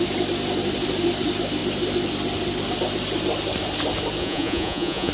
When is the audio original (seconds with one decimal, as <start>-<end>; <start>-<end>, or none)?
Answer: 0.0-4.2